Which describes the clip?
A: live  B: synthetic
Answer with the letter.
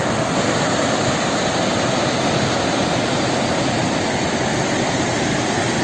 A